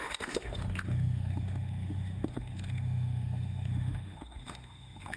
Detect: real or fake fake